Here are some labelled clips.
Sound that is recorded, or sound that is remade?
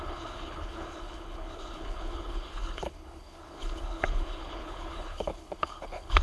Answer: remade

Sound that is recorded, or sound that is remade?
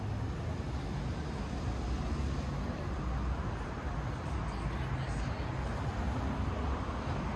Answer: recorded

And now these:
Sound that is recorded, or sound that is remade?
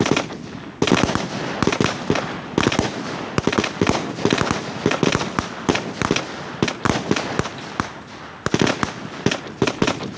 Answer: recorded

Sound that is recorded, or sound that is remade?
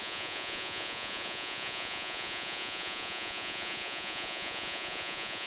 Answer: remade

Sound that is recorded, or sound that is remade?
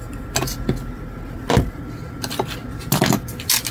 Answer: recorded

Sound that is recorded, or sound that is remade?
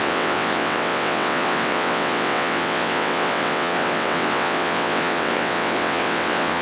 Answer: remade